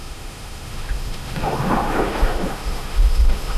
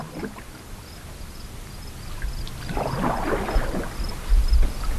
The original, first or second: second